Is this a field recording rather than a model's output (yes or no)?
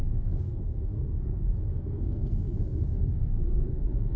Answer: no